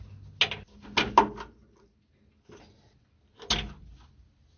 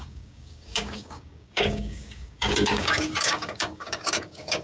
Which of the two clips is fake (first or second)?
second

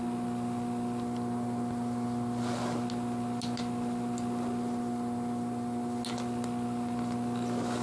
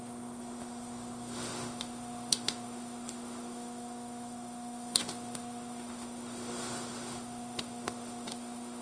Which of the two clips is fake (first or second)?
second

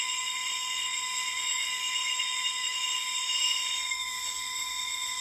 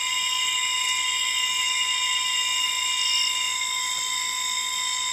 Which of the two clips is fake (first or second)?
first